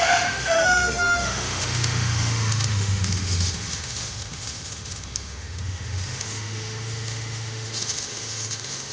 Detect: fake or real fake